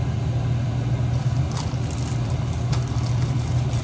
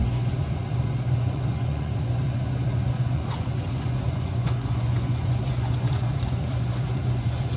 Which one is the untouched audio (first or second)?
first